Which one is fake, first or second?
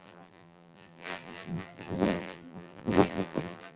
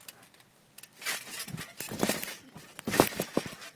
first